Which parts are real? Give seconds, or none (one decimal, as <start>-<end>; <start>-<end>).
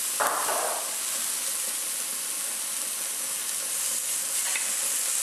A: 0.0-5.2